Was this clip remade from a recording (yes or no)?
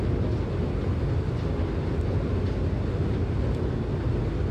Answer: no